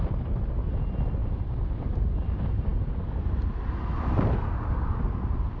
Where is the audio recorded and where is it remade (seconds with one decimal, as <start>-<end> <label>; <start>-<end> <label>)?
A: 0.0-5.6 recorded